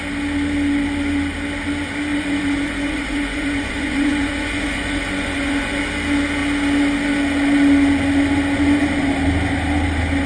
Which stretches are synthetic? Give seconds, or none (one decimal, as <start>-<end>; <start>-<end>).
2.1-5.8